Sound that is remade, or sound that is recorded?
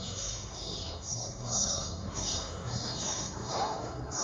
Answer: remade